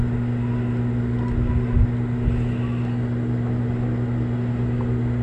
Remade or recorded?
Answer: recorded